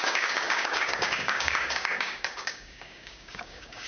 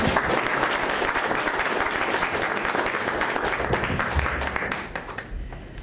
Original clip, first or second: second